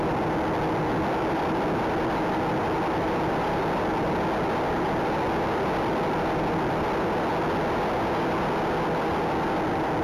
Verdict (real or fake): real